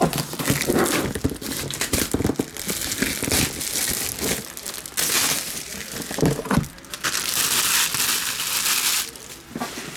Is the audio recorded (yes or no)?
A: yes